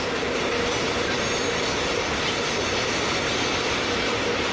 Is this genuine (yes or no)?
yes